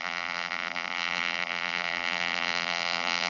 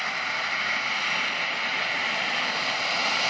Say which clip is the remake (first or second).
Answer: first